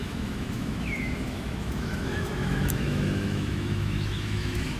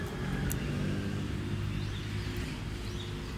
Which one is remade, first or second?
first